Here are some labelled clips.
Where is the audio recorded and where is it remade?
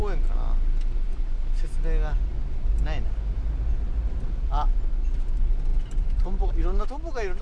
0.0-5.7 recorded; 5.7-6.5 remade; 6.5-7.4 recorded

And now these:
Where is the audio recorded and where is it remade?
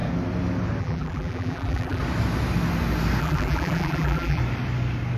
0.0-0.8 recorded; 0.8-2.0 remade; 2.0-3.2 recorded; 3.2-4.4 remade; 4.4-5.2 recorded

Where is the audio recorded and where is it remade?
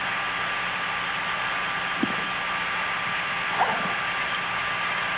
0.0-5.2 recorded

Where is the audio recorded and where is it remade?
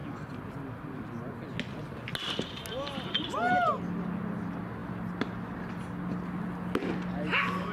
0.0-7.7 recorded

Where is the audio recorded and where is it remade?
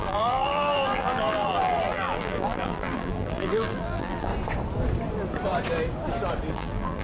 0.0-4.3 remade; 4.3-6.5 recorded; 6.5-7.0 remade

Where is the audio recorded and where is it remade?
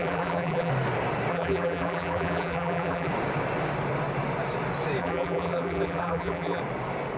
0.0-0.7 remade; 0.7-1.3 recorded; 1.3-3.1 remade; 3.1-5.0 recorded; 5.0-6.6 remade; 6.6-7.2 recorded